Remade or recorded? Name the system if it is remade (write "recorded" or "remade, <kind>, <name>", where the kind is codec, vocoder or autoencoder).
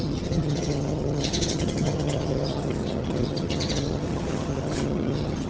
remade, vocoder, HiFi-GAN